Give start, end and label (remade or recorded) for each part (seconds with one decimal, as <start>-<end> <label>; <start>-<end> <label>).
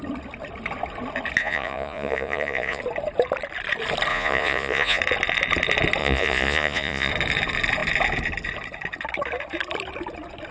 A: 0.0-1.4 recorded; 1.4-2.8 remade; 2.8-4.1 recorded; 4.1-5.0 remade; 5.0-6.0 recorded; 6.0-7.1 remade; 7.1-10.5 recorded